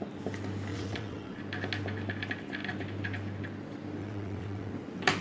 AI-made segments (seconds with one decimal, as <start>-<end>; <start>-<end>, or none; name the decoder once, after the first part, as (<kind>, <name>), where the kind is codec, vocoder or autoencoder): 0.7-1.4 (vocoder, WaveNeXt); 4.0-4.7